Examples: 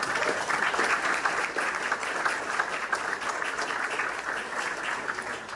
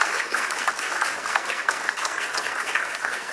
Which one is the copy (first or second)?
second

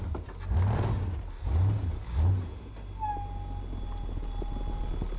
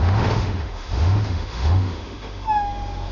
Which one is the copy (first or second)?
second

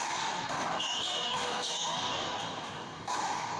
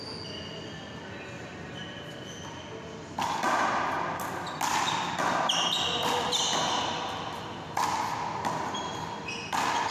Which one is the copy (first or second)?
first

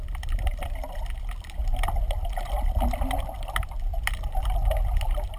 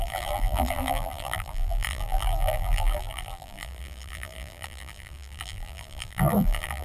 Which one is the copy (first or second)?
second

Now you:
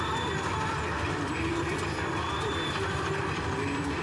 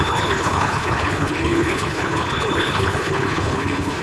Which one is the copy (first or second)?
second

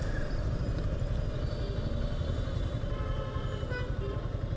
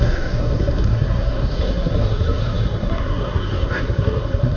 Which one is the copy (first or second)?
second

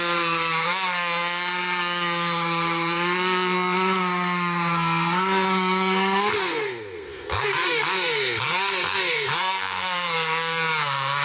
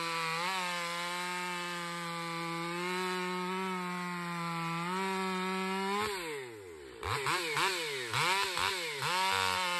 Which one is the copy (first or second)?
first